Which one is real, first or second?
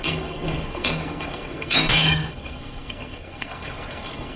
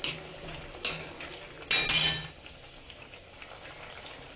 second